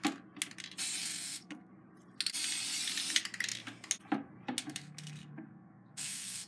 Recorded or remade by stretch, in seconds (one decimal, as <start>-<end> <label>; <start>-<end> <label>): 0.0-1.0 recorded; 1.0-1.7 remade; 1.7-4.6 recorded; 4.6-6.5 remade